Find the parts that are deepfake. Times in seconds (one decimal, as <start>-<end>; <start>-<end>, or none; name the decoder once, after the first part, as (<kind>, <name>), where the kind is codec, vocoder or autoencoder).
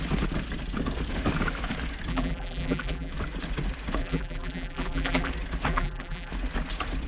2.1-3.1 (vocoder, BigVGAN v2); 4.0-5.3; 5.7-6.3